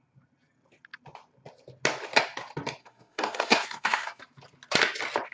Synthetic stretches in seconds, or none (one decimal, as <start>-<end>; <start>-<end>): 2.8-4.2